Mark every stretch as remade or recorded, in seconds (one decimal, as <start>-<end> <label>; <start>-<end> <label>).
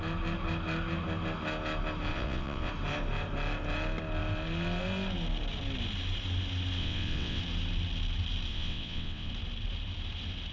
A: 0.0-2.1 recorded; 2.1-2.7 remade; 2.7-6.8 recorded; 6.8-7.4 remade; 7.4-8.5 recorded; 8.5-9.3 remade; 9.3-10.5 recorded